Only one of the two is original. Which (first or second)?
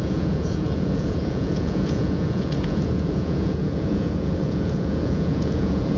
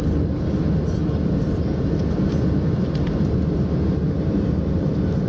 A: second